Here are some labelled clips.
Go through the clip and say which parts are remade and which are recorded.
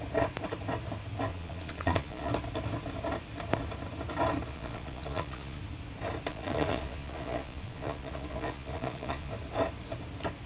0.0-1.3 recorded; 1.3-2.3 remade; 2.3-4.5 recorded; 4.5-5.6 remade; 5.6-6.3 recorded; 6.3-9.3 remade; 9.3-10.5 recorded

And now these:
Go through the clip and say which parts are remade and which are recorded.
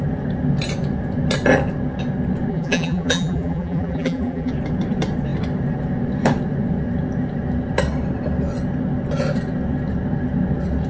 0.0-2.5 recorded; 2.5-4.5 remade; 4.5-10.9 recorded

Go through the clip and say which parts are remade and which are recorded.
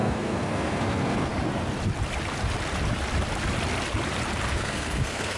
0.0-1.3 remade; 1.3-4.5 recorded; 4.5-5.4 remade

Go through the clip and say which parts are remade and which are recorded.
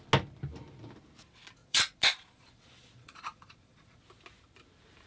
0.0-1.6 recorded; 1.6-4.0 remade; 4.0-5.1 recorded